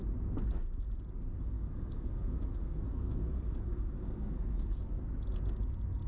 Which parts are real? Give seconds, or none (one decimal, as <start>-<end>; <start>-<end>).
0.0-1.4; 5.0-6.1